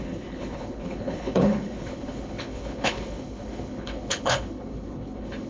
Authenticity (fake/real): fake